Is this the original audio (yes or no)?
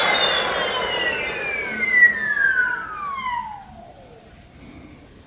yes